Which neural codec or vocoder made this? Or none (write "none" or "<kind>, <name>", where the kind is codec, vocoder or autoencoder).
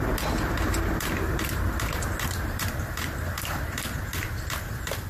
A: vocoder, BigVGAN v2